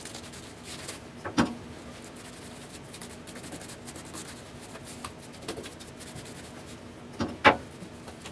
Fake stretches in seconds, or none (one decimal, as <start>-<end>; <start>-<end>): none